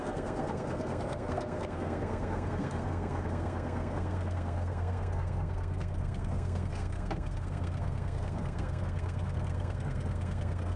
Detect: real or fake fake